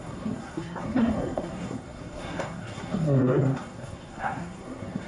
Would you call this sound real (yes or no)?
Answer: no